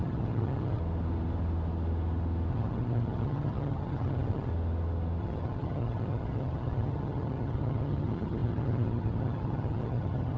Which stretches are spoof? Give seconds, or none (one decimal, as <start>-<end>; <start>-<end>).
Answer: 0.0-0.8; 2.5-4.5; 5.2-10.4